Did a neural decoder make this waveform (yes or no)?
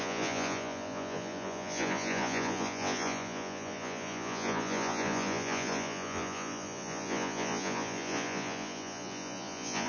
yes